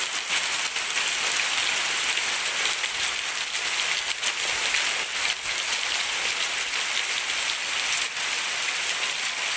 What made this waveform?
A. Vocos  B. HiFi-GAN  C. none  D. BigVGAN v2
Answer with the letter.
C